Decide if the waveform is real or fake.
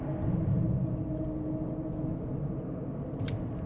real